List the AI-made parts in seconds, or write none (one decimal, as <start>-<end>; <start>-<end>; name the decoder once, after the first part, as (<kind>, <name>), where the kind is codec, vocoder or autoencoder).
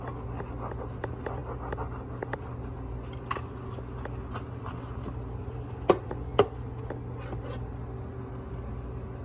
none